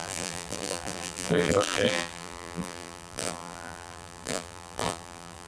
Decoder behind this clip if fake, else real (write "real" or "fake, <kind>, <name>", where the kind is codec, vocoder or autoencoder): fake, vocoder, BigVGAN v2